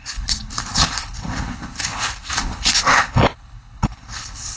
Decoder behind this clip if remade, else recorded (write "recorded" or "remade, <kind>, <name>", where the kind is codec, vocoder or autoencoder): remade, codec, HILCodec